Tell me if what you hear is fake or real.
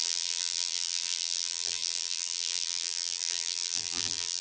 fake